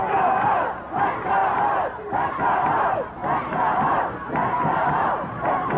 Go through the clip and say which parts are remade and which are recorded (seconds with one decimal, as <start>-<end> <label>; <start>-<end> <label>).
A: 0.0-1.4 recorded; 1.4-2.4 remade; 2.4-4.4 recorded; 4.4-5.8 remade